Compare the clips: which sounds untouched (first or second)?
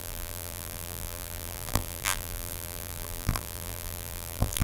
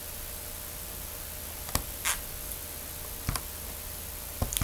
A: second